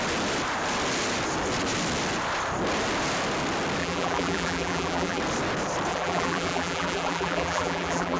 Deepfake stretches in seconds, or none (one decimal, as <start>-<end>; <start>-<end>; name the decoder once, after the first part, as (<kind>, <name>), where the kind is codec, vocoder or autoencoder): 3.8-5.2 (vocoder, BigVGAN v2); 5.9-8.2